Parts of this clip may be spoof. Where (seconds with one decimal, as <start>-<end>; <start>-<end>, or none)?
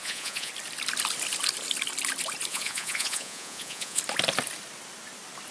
0.0-0.5; 2.5-4.0